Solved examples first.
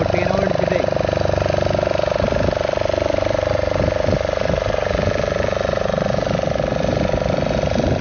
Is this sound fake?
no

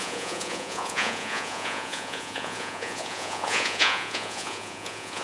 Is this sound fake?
yes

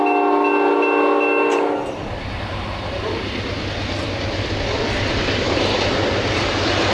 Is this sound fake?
no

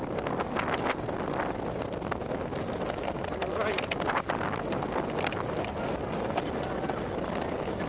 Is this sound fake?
no